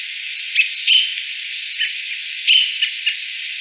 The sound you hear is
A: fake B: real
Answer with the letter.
B